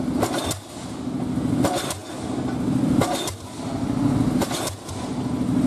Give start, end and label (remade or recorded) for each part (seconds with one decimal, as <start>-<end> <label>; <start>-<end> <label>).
0.0-5.7 recorded